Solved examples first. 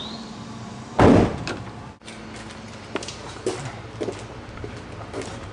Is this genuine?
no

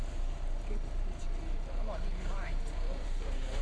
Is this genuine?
no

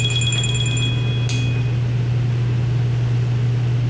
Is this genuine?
yes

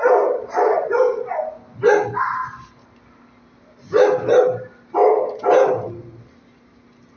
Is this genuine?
yes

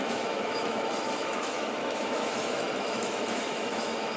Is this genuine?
no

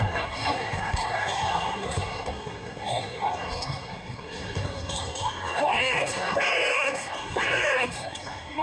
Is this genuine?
no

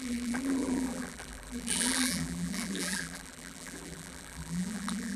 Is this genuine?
no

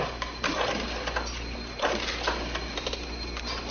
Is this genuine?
yes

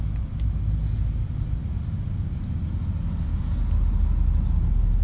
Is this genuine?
yes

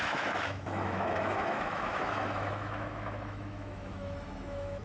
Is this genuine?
no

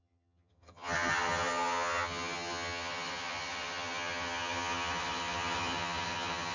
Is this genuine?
no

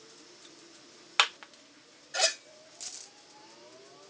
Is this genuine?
yes